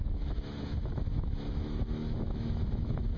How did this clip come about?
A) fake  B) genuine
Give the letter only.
A